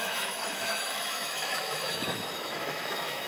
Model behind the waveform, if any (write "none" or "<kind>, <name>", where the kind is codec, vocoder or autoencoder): autoencoder, DAC-VAE